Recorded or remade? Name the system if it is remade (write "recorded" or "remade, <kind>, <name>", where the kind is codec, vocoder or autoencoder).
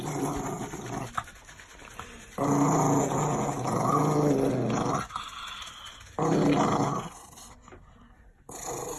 recorded